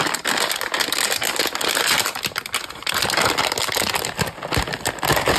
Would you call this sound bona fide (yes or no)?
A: yes